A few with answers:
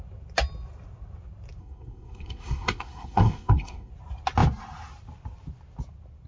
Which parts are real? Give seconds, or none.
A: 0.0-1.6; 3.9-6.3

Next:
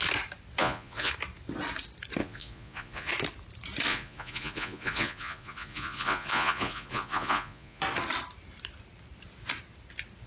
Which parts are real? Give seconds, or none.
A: 0.0-0.6; 1.1-2.2; 3.1-3.9; 7.8-10.3

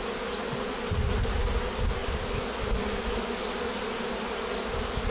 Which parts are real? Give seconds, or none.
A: 0.0-5.1

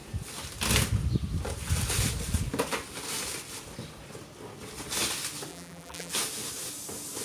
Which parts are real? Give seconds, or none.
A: 0.0-5.5; 6.1-7.2

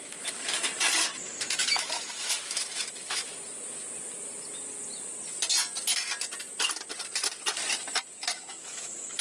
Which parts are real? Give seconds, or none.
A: 0.7-1.4; 3.3-8.5

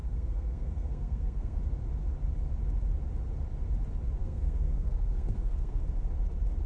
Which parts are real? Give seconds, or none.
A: 1.6-4.2; 5.8-6.7